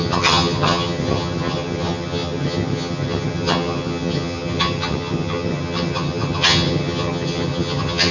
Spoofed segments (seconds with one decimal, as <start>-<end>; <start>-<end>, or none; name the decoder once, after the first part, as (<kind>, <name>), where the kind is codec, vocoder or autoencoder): 0.0-8.1 (vocoder, HiFi-GAN)

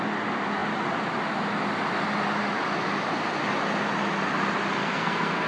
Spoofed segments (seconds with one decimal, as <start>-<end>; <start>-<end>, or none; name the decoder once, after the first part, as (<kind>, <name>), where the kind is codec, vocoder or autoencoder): 4.8-5.5 (codec, SNAC)

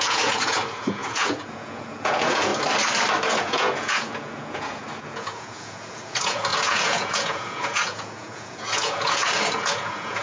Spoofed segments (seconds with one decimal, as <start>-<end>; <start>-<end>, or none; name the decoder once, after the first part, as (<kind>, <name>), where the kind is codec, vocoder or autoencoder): 0.0-2.5 (vocoder, Vocos); 3.4-10.2

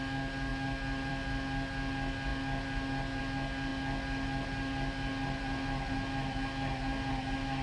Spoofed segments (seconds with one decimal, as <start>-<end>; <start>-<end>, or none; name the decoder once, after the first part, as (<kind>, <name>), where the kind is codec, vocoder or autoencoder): none

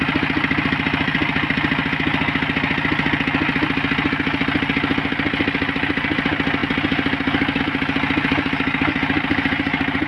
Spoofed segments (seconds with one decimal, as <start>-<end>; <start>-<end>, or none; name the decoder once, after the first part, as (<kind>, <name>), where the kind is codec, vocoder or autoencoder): none